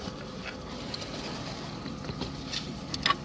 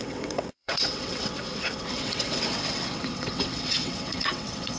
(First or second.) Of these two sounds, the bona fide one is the first